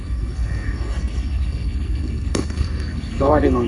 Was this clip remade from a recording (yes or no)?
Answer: yes